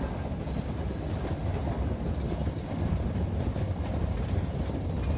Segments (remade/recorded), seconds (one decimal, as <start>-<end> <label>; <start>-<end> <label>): 0.0-5.2 recorded